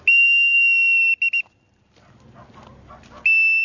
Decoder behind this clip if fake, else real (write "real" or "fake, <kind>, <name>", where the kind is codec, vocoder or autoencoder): real